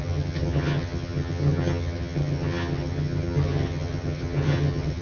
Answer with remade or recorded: remade